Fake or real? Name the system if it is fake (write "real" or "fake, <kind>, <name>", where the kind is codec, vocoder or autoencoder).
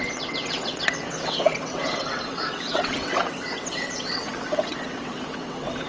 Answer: fake, vocoder, WaveNeXt